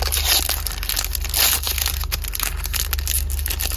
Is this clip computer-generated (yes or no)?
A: no